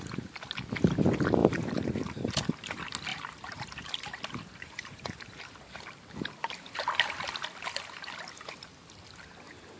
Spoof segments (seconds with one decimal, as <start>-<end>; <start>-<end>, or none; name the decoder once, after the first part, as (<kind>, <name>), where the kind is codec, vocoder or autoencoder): 1.4-2.4 (vocoder, BigVGAN v2); 3.1-5.8